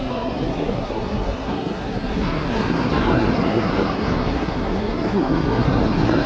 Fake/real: fake